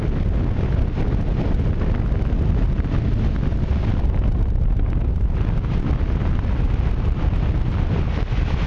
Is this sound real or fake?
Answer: real